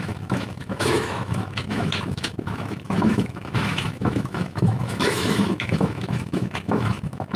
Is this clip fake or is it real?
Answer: fake